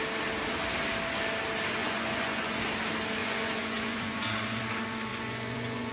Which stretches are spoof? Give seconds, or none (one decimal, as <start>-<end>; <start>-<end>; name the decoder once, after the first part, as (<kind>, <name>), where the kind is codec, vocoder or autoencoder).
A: 1.8-2.6 (vocoder, Vocos); 3.2-4.6; 5.1-5.9